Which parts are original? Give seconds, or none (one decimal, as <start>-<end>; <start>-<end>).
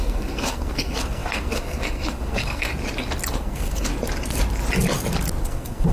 2.7-3.3; 3.9-5.4